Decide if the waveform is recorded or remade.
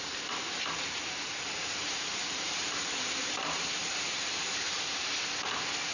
remade